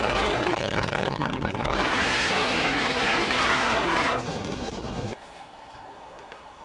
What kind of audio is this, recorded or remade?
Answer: remade